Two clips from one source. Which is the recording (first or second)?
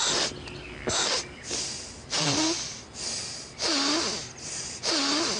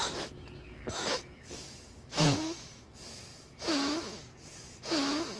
first